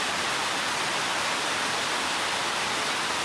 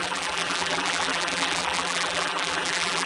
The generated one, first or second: second